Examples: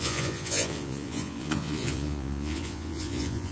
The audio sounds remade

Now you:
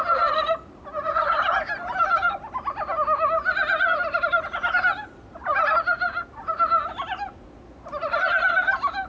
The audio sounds recorded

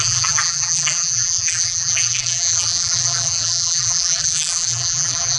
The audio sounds remade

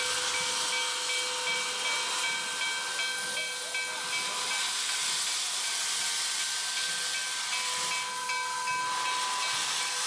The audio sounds recorded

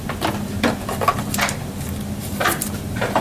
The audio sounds recorded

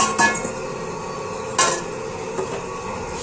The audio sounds recorded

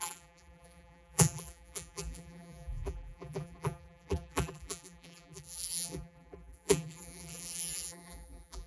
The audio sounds remade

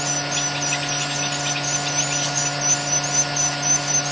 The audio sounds recorded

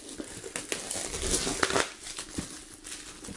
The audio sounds recorded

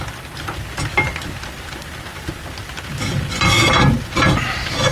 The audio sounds recorded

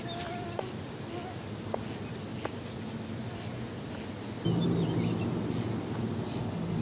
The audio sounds recorded